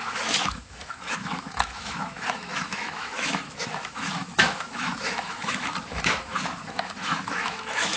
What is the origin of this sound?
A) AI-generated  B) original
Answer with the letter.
A